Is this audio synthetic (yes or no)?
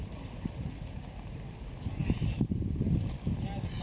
no